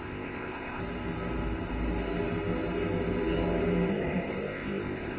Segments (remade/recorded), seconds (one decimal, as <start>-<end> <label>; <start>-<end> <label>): 0.0-0.8 remade; 0.8-3.9 recorded; 3.9-5.2 remade